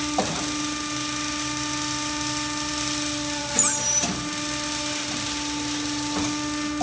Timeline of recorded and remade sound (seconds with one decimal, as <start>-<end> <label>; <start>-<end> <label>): 0.0-6.8 recorded